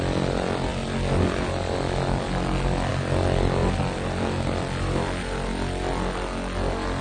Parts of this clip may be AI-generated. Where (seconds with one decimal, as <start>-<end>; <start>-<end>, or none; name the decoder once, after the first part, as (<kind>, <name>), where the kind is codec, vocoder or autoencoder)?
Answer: none